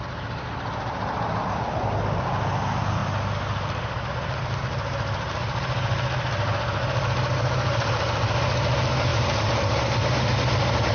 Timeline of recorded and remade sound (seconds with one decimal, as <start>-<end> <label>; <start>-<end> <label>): 0.0-9.1 recorded; 9.1-9.8 remade; 9.8-10.9 recorded